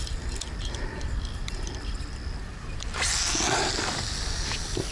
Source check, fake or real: fake